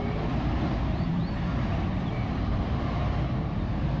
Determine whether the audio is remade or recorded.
remade